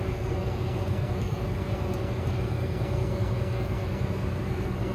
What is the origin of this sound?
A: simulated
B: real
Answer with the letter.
A